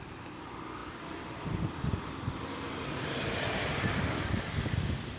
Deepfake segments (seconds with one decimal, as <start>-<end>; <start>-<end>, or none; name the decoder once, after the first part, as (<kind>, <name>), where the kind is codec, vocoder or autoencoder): none

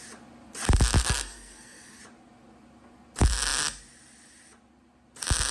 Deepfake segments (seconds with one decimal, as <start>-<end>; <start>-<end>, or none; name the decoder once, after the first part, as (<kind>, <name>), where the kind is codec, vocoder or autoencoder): 1.0-2.0 (codec, SNAC)

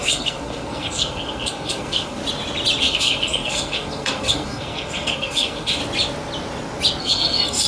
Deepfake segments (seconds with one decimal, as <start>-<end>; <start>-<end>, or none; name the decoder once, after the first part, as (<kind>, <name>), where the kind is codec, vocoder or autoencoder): 0.0-2.2 (codec, SNAC); 2.8-5.8; 7.0-7.7

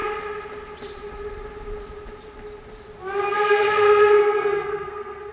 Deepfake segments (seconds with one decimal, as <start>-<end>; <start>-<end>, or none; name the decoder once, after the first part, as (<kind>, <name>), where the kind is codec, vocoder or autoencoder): 3.2-5.3 (codec, SNAC)

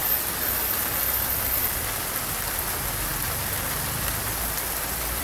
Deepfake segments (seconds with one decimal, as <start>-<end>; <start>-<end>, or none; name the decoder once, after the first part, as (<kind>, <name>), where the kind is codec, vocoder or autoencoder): none